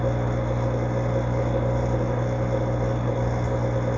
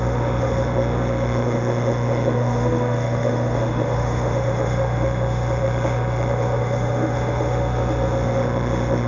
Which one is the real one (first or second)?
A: first